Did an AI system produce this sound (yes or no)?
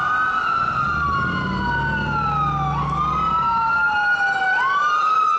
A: no